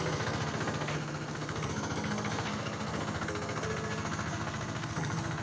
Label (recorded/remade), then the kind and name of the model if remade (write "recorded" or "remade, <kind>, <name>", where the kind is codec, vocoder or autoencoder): remade, codec, SNAC